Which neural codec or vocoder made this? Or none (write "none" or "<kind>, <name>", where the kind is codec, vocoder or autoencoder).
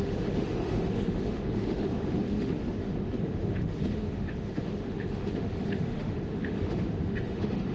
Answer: autoencoder, DAC-VAE